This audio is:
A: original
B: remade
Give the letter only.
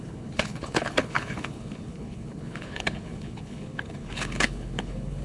B